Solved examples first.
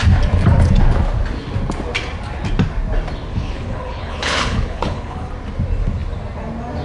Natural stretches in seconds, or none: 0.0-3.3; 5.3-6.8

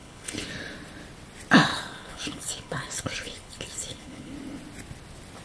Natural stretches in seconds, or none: 0.5-1.7; 4.3-5.4

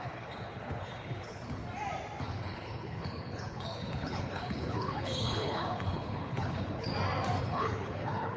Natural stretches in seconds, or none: 1.6-2.2; 6.9-7.4

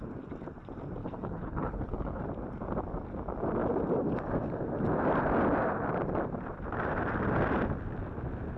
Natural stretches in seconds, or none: 0.0-1.0; 2.2-8.6

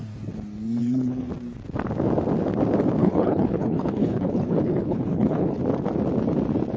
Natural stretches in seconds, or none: 0.0-0.8; 1.3-3.0; 5.6-6.8

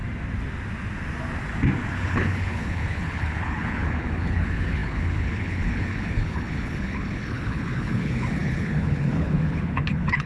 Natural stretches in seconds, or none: 0.0-1.9

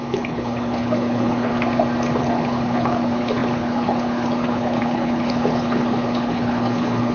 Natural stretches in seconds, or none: 1.5-2.2

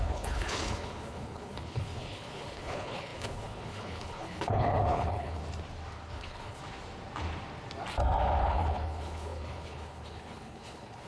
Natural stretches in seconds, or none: 5.4-6.1; 6.6-8.4